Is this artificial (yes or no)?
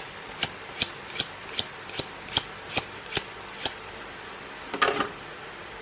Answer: no